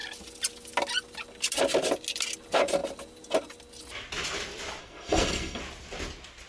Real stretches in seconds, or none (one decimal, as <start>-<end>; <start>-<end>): 0.0-4.8; 5.6-6.5